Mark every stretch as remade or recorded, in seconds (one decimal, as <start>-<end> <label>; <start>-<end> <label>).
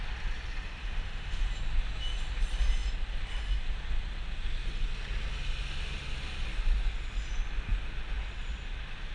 0.0-0.8 recorded; 0.8-1.5 remade; 1.5-9.1 recorded